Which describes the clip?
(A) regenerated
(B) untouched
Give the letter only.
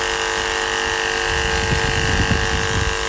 B